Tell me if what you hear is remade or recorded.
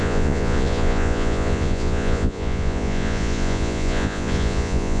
remade